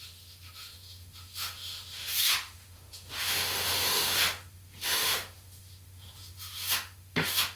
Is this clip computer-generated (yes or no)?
yes